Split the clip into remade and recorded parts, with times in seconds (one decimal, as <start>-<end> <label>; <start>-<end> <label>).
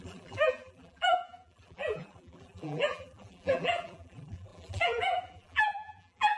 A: 0.0-6.4 remade